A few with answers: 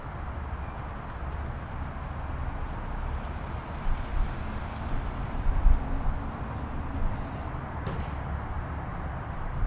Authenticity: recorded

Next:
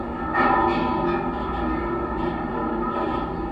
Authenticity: recorded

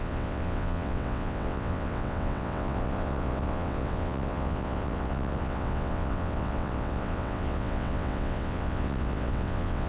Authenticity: remade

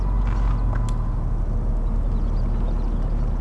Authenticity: recorded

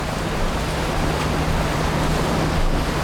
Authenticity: recorded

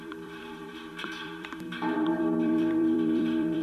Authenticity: remade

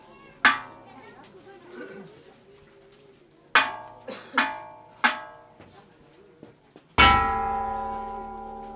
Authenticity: recorded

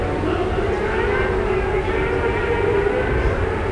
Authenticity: recorded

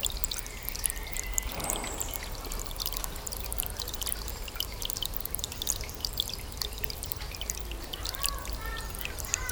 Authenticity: recorded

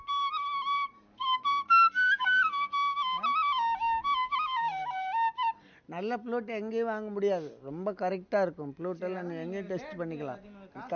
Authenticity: recorded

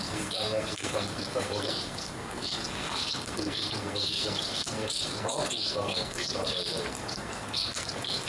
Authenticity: remade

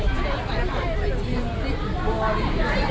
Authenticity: recorded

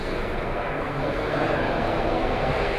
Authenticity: remade